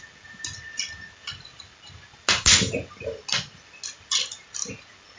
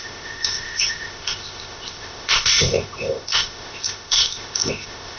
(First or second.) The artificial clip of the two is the second